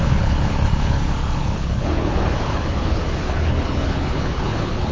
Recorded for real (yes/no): no